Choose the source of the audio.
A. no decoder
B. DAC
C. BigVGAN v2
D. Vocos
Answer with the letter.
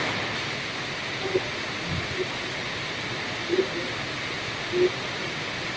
A